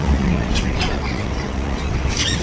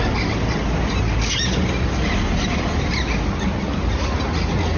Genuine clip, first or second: second